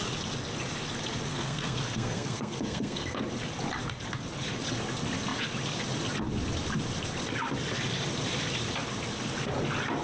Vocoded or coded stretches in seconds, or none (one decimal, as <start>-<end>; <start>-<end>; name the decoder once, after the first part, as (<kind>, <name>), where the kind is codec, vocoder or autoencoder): 1.3-3.2 (codec, SNAC)